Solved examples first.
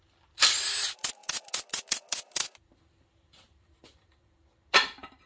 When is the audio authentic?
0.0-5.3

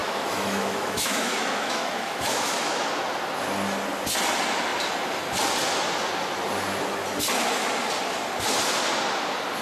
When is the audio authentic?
2.9-9.6

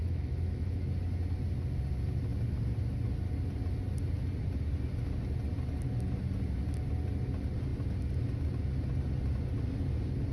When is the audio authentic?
0.9-10.3

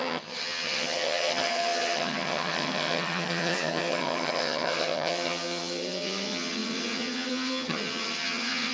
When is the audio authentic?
none

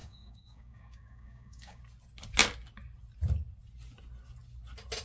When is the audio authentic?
1.8-5.0

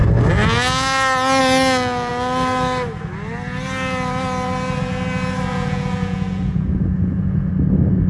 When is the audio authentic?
0.0-5.5; 7.5-8.1